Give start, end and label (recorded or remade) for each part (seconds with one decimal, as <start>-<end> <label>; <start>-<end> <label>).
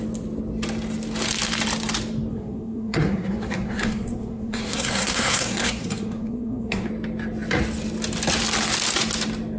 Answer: 0.0-2.3 recorded; 2.3-6.9 remade; 6.9-9.6 recorded